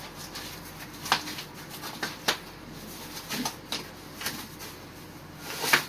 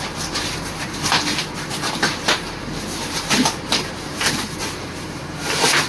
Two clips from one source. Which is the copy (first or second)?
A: second